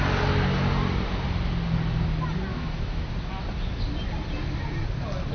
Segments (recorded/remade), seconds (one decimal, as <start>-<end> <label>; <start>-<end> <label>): 0.0-2.5 recorded; 2.5-3.1 remade; 3.1-5.3 recorded